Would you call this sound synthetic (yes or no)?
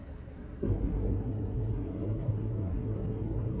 yes